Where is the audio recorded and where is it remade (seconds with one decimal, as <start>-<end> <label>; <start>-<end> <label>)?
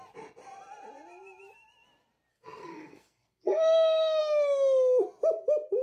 0.0-2.3 recorded; 2.3-4.2 remade; 4.2-5.8 recorded